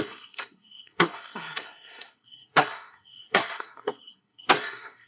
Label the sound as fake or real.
fake